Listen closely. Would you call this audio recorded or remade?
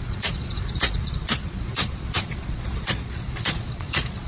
remade